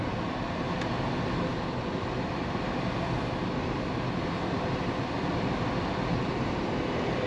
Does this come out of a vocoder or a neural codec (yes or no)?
no